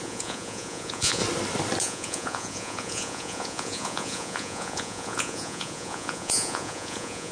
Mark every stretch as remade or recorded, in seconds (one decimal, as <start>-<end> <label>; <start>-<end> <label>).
0.0-1.2 remade; 1.2-1.8 recorded; 1.8-7.3 remade